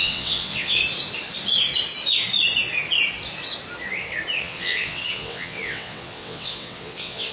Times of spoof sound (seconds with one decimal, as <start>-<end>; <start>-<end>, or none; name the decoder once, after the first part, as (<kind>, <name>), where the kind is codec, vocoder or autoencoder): 0.0-0.8 (vocoder, WaveNeXt); 4.4-7.3